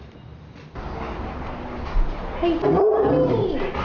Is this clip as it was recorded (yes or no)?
yes